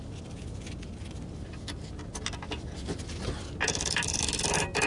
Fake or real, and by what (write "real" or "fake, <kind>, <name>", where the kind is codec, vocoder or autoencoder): real